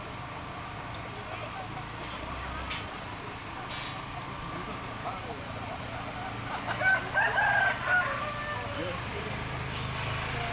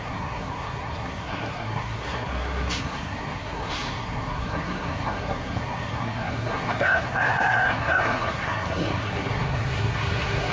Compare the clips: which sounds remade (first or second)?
second